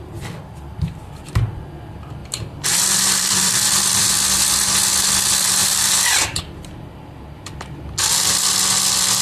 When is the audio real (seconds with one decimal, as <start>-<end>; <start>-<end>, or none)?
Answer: 0.0-2.2; 4.5-5.6; 6.4-9.2